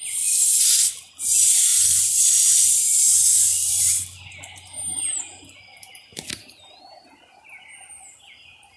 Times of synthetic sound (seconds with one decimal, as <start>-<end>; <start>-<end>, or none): 1.7-3.7